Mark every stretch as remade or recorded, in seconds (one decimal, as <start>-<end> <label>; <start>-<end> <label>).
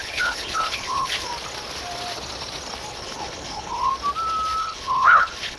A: 0.0-1.3 remade; 1.3-2.9 recorded; 2.9-3.9 remade; 3.9-4.6 recorded; 4.6-5.6 remade